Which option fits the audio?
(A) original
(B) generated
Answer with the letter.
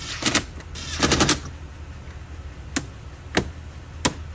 A